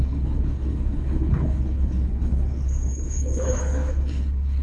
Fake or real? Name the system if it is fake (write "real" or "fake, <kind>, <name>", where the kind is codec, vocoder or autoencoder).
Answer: fake, codec, HILCodec